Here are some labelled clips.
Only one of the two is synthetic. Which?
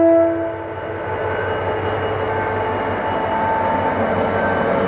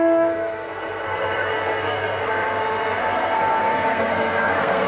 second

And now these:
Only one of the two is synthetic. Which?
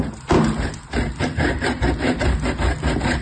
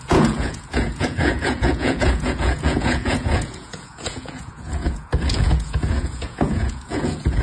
second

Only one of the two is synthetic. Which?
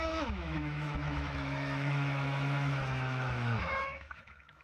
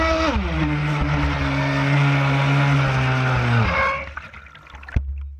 first